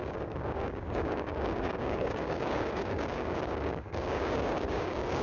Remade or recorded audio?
remade